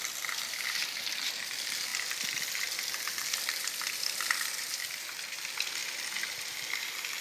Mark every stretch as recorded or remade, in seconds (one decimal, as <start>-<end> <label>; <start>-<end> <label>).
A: 0.0-7.2 recorded